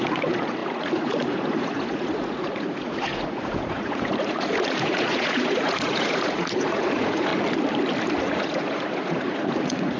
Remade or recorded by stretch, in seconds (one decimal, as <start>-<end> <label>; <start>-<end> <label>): 0.0-7.3 remade; 7.3-8.1 recorded; 8.1-10.0 remade